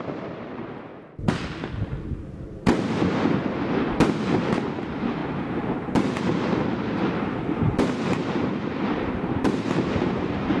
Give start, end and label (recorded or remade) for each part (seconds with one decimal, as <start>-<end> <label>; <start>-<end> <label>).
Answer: 0.0-0.9 remade; 0.9-4.8 recorded; 4.8-10.6 remade